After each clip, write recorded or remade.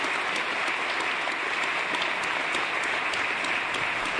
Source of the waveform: recorded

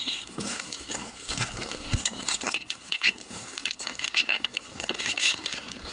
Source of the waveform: remade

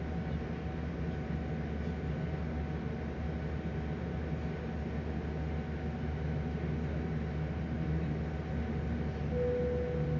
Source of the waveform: recorded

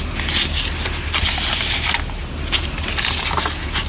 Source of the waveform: recorded